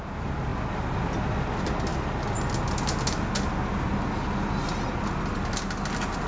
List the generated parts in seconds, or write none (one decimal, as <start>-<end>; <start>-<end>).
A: none

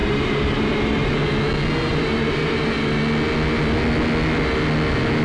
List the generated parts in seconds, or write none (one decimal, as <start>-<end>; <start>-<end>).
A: 0.0-1.1; 1.9-3.0